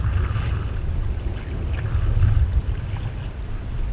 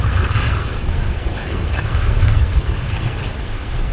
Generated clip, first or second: second